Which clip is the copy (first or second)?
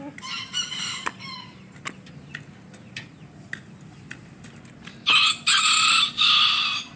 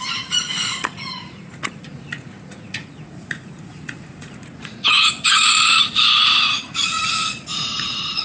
second